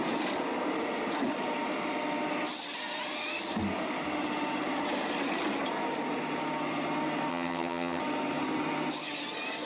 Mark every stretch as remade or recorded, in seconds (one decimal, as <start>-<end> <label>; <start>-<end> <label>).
0.0-7.3 recorded; 7.3-8.0 remade; 8.0-9.7 recorded